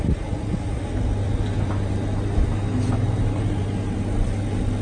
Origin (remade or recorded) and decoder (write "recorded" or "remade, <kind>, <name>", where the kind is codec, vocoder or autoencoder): recorded